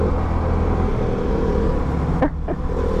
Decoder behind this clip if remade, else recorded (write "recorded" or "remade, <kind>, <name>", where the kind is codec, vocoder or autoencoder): recorded